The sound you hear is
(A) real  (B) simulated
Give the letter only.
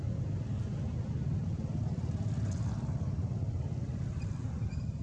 A